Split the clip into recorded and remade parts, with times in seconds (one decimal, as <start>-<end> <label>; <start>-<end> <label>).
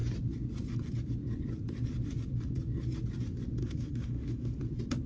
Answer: 0.0-3.6 recorded; 3.6-4.6 remade; 4.6-5.1 recorded